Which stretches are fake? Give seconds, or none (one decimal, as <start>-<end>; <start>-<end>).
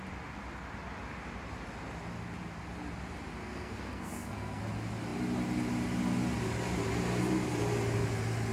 3.4-4.6